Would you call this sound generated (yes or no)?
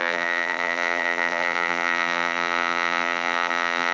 yes